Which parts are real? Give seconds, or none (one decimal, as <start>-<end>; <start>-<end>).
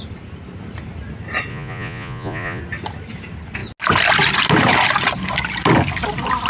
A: 0.0-1.5; 2.6-6.5